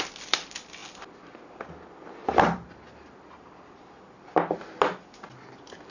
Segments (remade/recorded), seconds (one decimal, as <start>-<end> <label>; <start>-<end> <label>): 0.0-5.9 recorded